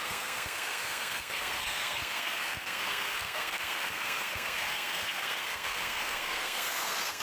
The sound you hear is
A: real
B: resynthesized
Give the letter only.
B